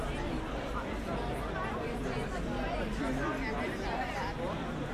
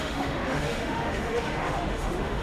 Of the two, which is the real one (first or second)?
first